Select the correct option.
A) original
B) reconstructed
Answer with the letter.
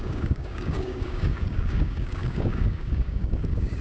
B